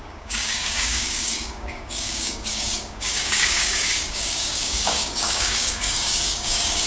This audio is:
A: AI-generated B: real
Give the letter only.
A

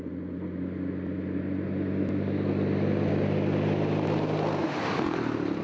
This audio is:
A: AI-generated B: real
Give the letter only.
B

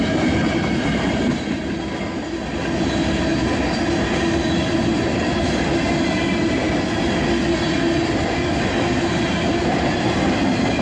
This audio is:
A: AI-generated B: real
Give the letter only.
B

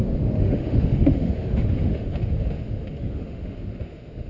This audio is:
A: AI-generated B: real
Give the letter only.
A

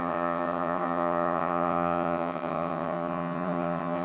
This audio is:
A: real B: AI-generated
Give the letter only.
B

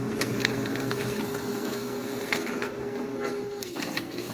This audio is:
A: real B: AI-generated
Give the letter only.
B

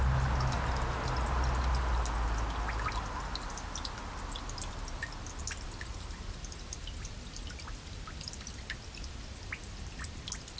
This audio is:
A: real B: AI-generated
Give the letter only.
A